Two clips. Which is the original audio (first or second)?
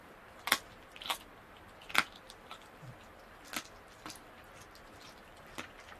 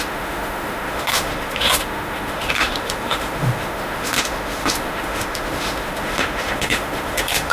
first